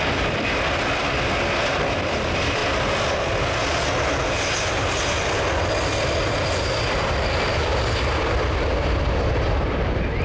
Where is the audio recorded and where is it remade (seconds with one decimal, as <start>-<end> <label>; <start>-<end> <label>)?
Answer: 0.0-2.6 remade; 2.6-6.9 recorded; 6.9-7.7 remade; 7.7-9.3 recorded; 9.3-10.2 remade